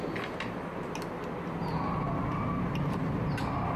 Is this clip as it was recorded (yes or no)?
yes